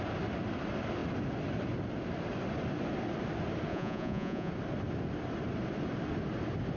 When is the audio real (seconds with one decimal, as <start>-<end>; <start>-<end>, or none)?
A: 0.0-3.7; 4.5-6.8